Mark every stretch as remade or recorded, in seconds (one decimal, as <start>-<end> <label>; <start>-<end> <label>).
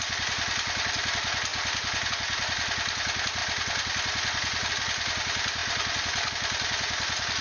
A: 0.0-7.4 recorded